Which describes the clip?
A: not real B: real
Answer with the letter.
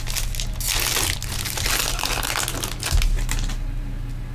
B